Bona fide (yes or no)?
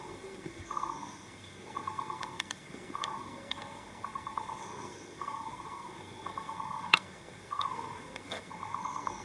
no